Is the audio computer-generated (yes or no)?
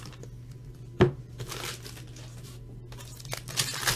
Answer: no